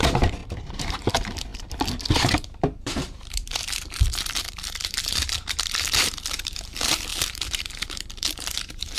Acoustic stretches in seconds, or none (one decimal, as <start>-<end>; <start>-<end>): none